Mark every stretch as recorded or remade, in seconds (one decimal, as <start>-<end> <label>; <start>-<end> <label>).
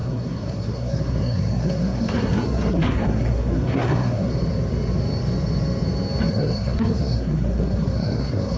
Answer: 0.0-4.3 remade; 4.3-6.3 recorded; 6.3-8.6 remade